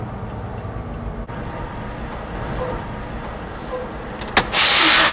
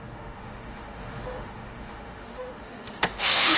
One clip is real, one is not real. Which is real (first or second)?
first